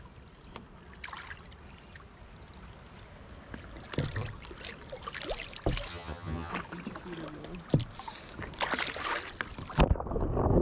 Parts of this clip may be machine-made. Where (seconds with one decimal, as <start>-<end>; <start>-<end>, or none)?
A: 5.9-6.5